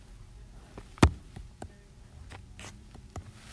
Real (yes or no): yes